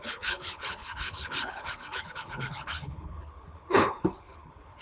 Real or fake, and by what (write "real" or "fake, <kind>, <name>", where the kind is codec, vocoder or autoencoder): fake, codec, HILCodec